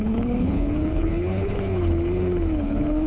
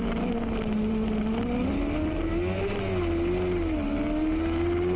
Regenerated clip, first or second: first